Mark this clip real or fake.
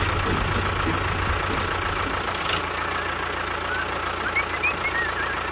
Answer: real